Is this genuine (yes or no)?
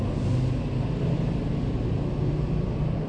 yes